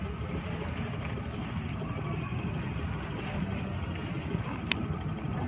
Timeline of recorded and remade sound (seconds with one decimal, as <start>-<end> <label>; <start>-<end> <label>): 0.0-5.5 recorded